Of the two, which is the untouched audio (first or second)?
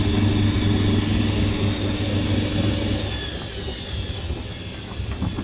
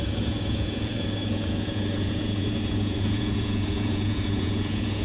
first